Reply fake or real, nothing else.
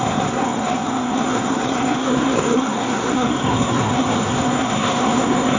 fake